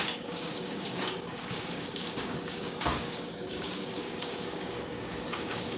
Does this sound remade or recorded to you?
remade